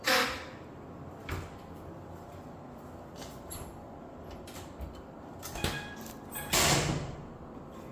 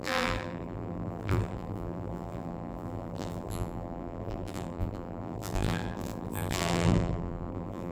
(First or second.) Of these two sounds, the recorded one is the first